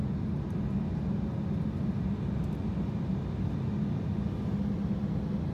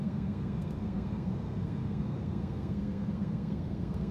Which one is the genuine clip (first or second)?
first